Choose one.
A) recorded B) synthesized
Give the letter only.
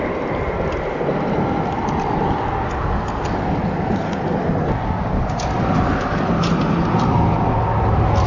A